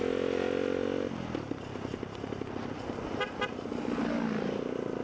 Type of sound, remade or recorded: recorded